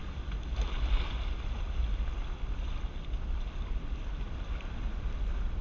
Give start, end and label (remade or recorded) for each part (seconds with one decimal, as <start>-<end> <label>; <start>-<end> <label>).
0.0-5.6 recorded